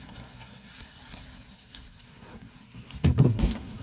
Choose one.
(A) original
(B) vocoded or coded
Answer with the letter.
B